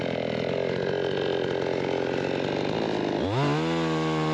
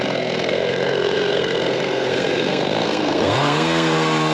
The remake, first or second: second